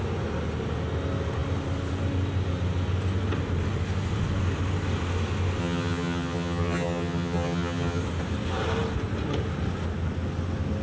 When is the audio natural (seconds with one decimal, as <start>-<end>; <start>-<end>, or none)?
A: 0.0-5.6; 8.0-10.8